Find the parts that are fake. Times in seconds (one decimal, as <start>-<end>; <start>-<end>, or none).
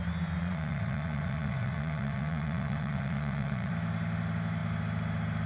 0.4-3.7